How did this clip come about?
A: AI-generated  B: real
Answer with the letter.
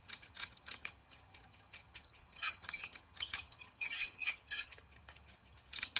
A